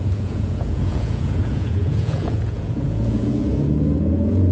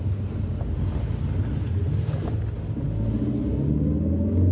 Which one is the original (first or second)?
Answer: second